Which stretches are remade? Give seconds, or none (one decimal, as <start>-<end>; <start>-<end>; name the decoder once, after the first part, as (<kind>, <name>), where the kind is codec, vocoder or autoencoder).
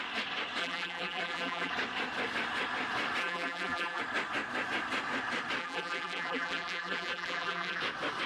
0.6-1.7 (vocoder, BigVGAN v2); 3.2-4.0; 5.6-7.8